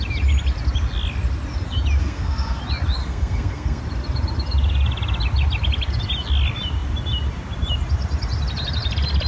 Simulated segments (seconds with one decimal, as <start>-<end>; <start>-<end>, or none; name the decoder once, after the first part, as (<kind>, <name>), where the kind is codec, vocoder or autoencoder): 2.0-2.6 (codec, SNAC); 3.0-3.8

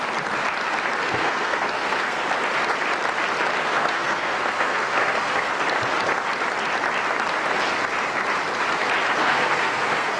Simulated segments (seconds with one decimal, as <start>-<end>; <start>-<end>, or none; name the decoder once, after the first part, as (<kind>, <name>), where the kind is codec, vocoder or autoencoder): 1.0-2.2 (codec, SNAC); 3.6-5.5; 9.2-10.2

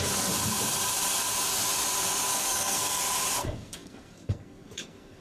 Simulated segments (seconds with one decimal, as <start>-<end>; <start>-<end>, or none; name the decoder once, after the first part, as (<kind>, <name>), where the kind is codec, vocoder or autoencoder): 2.3-3.0 (codec, SNAC); 3.4-5.2

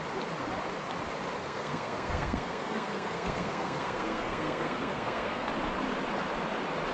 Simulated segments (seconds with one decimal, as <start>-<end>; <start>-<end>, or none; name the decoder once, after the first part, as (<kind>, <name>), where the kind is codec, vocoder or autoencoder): 1.4-5.5 (codec, SNAC)

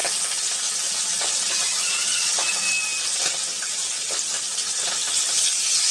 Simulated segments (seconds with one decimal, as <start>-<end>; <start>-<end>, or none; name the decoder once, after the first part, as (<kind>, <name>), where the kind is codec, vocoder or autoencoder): none

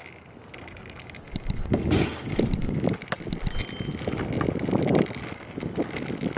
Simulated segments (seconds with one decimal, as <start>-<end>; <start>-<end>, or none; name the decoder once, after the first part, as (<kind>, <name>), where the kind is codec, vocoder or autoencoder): none

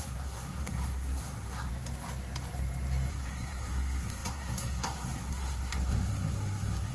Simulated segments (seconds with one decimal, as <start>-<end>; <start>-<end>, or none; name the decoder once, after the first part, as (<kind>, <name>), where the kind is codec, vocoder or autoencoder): 0.0-1.7 (codec, SNAC); 3.1-6.9